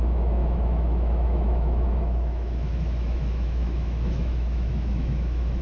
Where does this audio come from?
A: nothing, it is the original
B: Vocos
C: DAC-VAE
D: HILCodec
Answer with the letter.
C